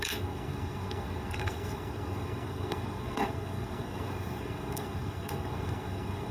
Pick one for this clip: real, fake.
fake